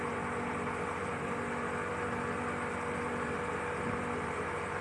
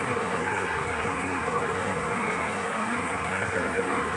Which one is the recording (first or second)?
first